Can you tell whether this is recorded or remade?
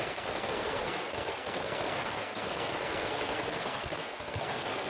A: remade